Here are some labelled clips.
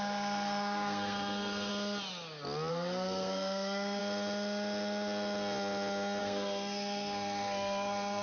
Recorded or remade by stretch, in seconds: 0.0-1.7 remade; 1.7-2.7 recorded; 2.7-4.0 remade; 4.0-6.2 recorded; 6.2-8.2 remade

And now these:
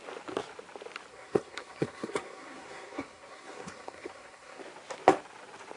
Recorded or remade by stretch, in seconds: 0.0-1.1 recorded; 1.1-4.6 remade; 4.6-5.8 recorded

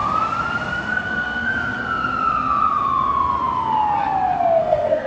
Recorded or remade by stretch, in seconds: 0.0-0.9 recorded; 0.9-1.5 remade; 1.5-4.6 recorded; 4.6-5.1 remade

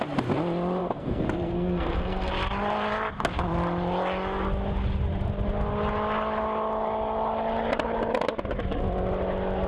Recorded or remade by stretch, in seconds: 0.0-0.8 recorded; 0.8-2.3 remade; 2.3-9.7 recorded

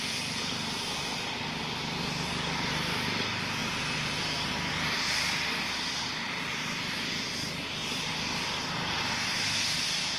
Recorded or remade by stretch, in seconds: 0.0-10.2 recorded

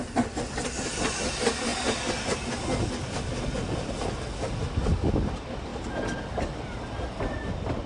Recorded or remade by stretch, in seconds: 0.0-7.9 recorded

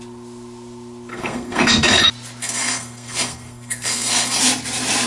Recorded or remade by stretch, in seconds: 0.0-1.1 recorded; 1.1-2.0 remade; 2.0-2.4 recorded; 2.4-4.4 remade; 4.4-5.1 recorded